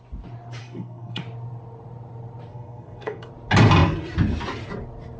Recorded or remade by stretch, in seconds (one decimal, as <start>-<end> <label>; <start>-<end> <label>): 0.0-0.6 recorded; 0.6-1.2 remade; 1.2-2.5 recorded; 2.5-3.3 remade; 3.3-5.2 recorded